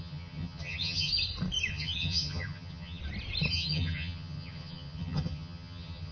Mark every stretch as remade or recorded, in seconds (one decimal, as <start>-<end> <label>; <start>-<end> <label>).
0.0-1.1 remade; 1.1-1.7 recorded; 1.7-3.0 remade; 3.0-3.5 recorded; 3.5-6.1 remade